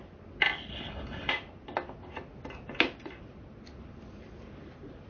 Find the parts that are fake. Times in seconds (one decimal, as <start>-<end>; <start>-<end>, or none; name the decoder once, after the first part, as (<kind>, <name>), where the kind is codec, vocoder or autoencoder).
0.7-1.3 (codec, HILCodec)